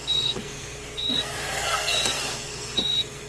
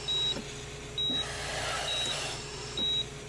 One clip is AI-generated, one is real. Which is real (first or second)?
second